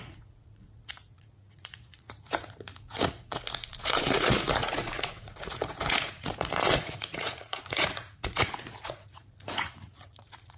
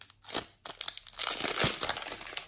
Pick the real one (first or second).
second